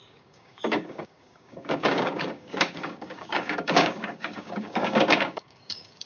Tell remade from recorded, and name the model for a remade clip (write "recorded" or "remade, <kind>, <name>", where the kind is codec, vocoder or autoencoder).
remade, codec, DAC